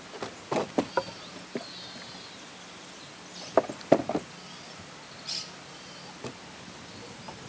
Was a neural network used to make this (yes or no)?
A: no